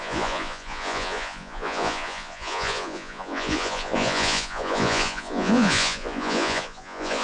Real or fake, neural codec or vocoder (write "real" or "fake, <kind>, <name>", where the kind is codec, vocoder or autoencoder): fake, vocoder, Vocos